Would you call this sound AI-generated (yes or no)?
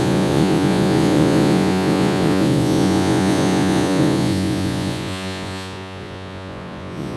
yes